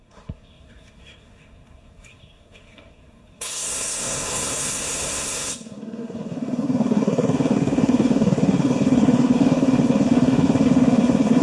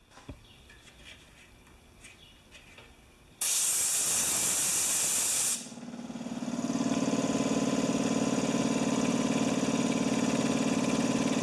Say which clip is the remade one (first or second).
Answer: first